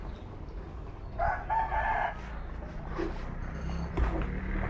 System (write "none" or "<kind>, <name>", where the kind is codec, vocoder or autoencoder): none